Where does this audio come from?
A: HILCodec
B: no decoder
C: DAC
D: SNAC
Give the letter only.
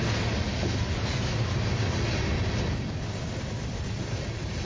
B